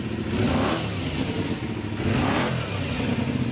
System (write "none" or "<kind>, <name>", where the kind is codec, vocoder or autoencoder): none